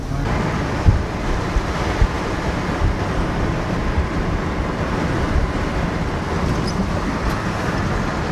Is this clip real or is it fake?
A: real